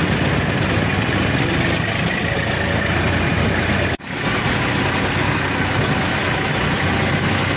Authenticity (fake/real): real